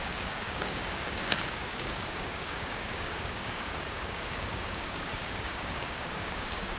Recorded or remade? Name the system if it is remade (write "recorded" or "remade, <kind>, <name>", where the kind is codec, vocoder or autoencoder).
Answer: remade, codec, DAC